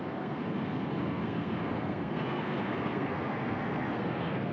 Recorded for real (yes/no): no